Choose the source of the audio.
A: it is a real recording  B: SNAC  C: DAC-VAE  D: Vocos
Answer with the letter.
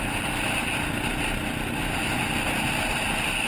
A